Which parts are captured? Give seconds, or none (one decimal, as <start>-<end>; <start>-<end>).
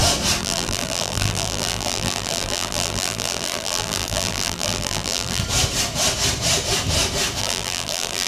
0.0-0.4; 5.4-7.4